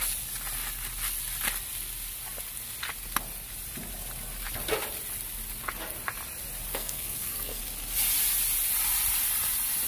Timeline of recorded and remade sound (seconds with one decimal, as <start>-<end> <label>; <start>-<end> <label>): 0.0-6.7 recorded; 6.7-7.6 remade; 7.6-9.9 recorded